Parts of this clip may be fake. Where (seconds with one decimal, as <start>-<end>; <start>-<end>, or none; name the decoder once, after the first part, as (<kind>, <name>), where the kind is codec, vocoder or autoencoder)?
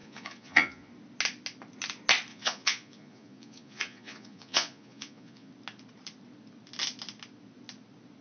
0.0-0.9 (vocoder, Vocos); 2.3-5.5